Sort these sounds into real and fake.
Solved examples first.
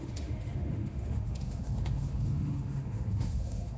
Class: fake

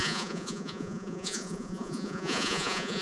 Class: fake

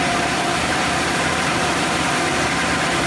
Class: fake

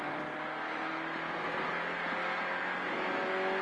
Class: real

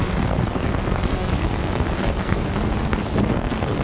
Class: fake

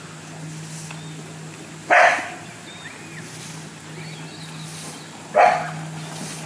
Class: real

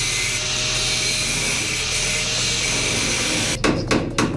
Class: real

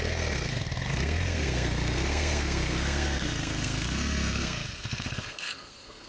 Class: fake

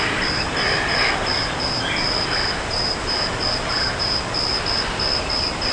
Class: real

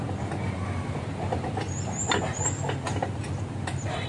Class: real